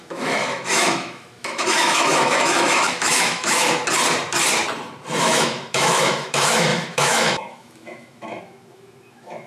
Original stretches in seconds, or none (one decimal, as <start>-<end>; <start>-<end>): 3.8-5.2